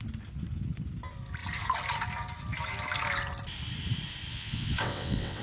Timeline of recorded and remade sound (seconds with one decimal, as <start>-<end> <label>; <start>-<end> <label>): 0.0-4.3 recorded; 4.3-5.4 remade